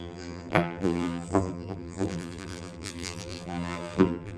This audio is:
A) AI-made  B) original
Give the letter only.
A